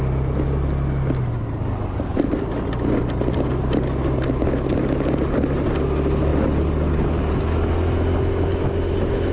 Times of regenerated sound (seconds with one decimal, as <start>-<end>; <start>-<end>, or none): none